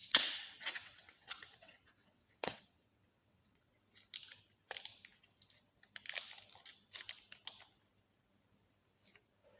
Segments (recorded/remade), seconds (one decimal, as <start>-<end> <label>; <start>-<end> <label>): 0.0-3.8 remade; 3.8-9.6 recorded